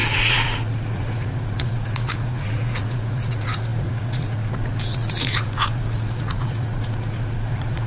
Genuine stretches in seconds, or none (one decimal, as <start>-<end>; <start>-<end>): none